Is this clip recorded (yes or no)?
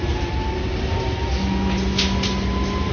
yes